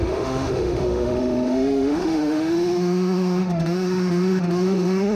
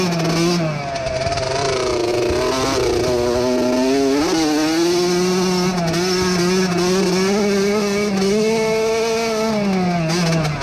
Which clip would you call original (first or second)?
second